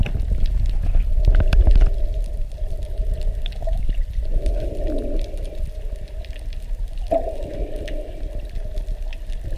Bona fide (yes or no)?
yes